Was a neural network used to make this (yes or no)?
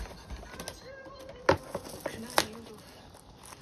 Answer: no